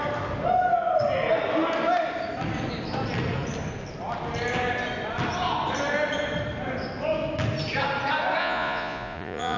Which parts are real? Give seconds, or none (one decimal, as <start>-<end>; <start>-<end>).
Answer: 0.0-8.4